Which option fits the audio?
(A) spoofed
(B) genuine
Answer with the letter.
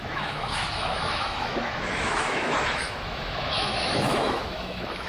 A